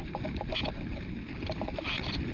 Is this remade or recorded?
recorded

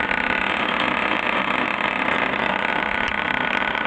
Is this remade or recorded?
remade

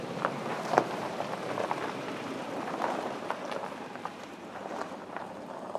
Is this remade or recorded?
remade